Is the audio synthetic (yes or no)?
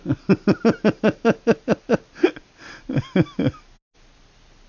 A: no